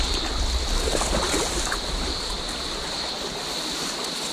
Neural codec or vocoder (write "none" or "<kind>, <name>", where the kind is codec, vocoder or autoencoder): none